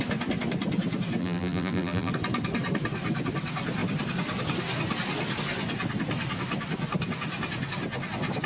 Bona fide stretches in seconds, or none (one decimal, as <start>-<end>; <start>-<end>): 0.0-1.2; 2.1-8.5